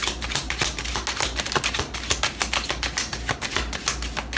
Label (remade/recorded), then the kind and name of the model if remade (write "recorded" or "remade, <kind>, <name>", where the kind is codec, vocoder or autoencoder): recorded